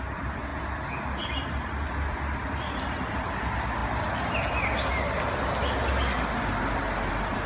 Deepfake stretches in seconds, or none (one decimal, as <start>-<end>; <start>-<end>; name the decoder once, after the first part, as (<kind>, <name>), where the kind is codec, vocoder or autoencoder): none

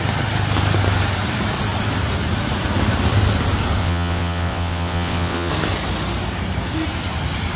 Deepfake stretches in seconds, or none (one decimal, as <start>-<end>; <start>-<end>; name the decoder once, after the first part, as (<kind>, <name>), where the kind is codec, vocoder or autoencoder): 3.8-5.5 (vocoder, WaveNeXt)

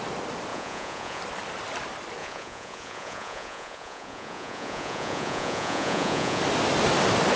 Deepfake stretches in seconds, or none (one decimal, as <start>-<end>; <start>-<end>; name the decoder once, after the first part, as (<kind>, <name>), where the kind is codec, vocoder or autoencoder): 0.5-1.2 (vocoder, Vocos); 2.2-6.4

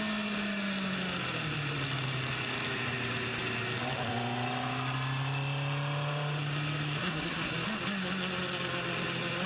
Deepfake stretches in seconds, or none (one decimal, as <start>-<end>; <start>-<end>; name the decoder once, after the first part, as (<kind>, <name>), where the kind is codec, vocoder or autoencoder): 7.0-7.5 (codec, SNAC)

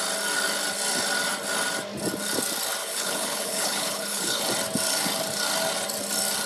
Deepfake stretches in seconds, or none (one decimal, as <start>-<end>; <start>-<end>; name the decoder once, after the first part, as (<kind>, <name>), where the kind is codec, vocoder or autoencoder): 2.8-4.4 (codec, HILCodec)